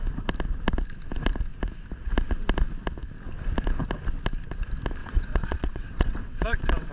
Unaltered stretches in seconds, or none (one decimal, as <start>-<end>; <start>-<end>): 0.0-5.0